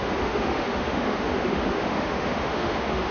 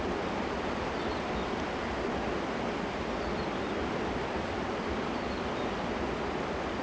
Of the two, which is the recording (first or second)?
second